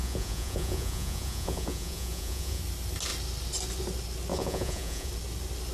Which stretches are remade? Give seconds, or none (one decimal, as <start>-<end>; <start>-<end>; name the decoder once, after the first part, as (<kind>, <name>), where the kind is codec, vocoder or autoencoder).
0.0-2.6 (vocoder, Vocos); 4.3-5.1